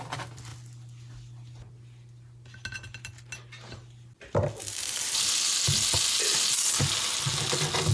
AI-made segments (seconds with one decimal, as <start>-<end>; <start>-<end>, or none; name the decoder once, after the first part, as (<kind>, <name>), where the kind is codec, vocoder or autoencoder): none